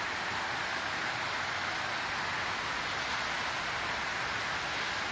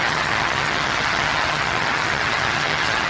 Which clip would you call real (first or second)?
first